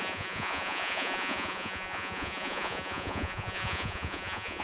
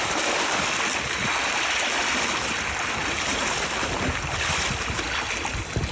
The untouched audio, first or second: second